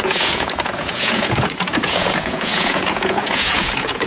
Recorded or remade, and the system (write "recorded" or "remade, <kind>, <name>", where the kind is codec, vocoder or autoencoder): remade, vocoder, Vocos